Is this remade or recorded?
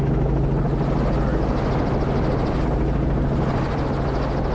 recorded